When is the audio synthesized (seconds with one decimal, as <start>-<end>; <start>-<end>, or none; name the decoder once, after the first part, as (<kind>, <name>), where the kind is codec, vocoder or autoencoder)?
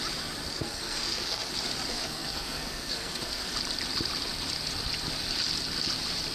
0.5-1.5 (codec, SNAC); 1.9-3.5